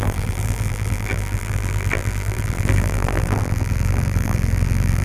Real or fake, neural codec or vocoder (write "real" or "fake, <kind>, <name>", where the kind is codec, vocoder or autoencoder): fake, vocoder, BigVGAN v2